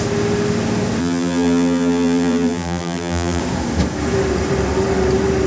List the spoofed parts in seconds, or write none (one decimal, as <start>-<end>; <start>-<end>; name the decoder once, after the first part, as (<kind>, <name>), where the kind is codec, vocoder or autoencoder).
1.0-3.4 (vocoder, BigVGAN v2)